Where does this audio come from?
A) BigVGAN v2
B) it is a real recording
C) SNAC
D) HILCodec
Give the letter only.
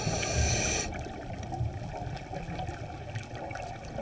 B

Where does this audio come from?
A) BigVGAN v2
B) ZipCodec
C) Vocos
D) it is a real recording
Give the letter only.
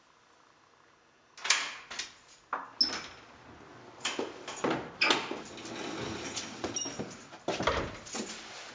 D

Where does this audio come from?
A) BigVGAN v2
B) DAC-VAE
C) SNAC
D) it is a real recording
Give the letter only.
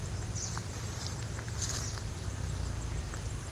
D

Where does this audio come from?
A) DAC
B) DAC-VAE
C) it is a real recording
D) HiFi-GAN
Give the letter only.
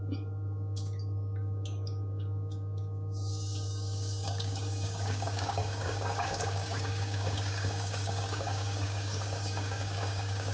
A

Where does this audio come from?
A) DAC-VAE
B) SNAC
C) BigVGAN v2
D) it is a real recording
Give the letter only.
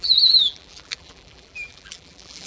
C